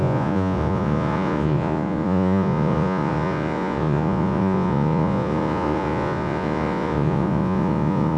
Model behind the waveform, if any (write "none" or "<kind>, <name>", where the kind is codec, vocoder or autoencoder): vocoder, Vocos